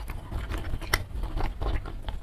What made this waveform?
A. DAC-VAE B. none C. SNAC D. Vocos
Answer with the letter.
B